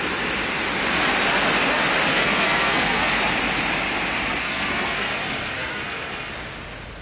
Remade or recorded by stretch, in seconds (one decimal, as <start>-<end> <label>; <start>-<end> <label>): 0.0-2.1 recorded; 2.1-3.1 remade; 3.1-4.4 recorded; 4.4-6.3 remade; 6.3-7.0 recorded